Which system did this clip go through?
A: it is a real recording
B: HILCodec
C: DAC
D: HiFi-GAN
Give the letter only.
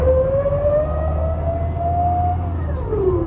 A